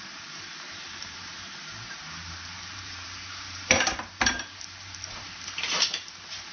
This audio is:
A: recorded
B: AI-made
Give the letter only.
B